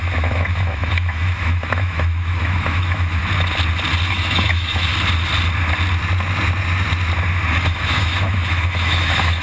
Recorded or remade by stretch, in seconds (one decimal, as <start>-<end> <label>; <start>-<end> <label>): 0.0-3.2 remade; 3.2-4.1 recorded; 4.1-4.9 remade; 4.9-7.5 recorded; 7.5-9.4 remade